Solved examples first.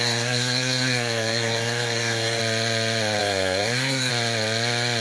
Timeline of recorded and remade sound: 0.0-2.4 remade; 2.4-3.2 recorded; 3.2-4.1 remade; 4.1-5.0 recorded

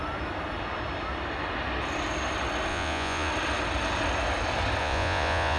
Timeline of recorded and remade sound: 0.0-2.7 recorded; 2.7-3.3 remade; 3.3-4.8 recorded; 4.8-5.6 remade